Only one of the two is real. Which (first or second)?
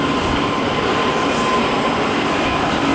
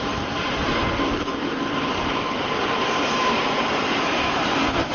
first